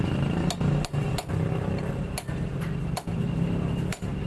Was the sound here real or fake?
real